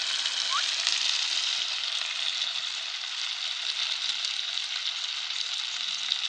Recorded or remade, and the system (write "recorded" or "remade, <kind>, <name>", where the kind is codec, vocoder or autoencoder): recorded